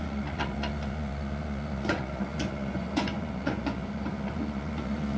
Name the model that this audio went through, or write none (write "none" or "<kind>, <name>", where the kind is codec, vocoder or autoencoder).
vocoder, Vocos